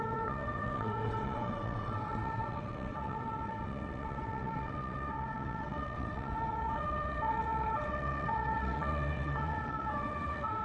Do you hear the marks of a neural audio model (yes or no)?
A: yes